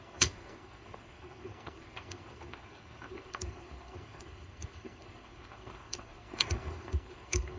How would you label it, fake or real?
fake